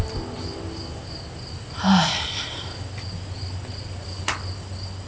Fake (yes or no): no